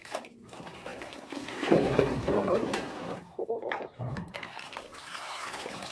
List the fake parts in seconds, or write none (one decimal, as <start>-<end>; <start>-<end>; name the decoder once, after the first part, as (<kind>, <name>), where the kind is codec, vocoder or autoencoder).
0.0-5.9 (codec, SNAC)